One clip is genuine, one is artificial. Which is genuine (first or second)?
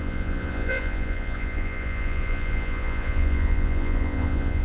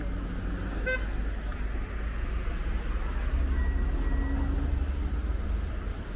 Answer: second